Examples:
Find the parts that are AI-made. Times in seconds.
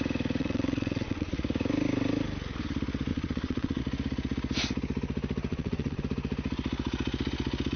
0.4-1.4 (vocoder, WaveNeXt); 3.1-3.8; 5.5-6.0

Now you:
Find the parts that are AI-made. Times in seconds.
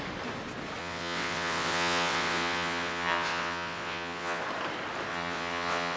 0.8-4.4 (vocoder, WaveNeXt); 5.1-6.0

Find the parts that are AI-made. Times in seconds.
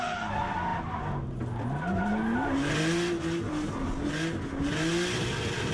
none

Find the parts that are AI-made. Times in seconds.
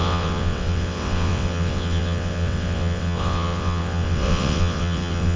0.0-5.4 (vocoder, WaveNeXt)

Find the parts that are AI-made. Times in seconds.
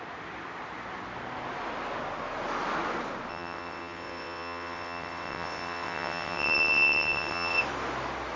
3.3-7.6 (vocoder, WaveNeXt)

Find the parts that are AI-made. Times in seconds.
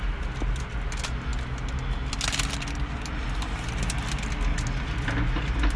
none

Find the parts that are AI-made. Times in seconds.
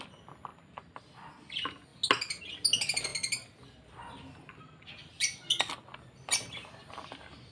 none